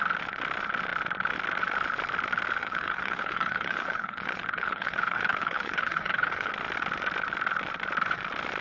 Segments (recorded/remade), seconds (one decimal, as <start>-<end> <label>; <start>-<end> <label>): 0.0-2.6 recorded; 2.6-6.5 remade; 6.5-8.6 recorded